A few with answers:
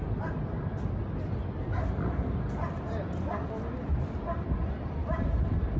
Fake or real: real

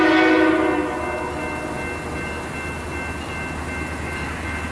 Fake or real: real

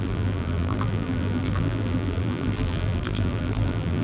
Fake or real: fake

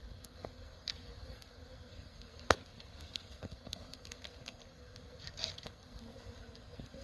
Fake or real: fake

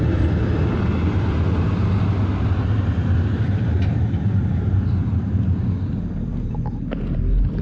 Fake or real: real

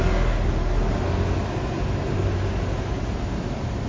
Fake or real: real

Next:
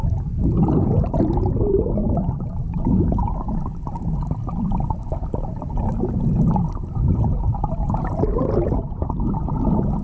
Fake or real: real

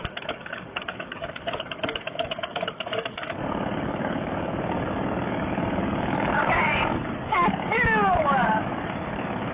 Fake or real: fake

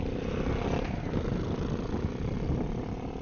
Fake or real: real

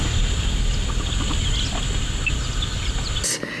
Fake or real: real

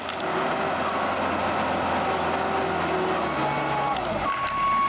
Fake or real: real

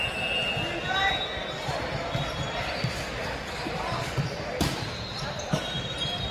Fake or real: fake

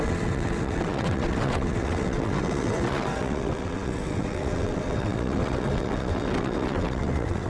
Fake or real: fake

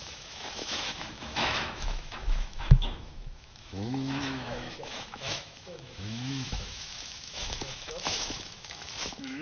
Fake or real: fake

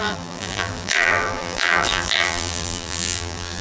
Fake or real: fake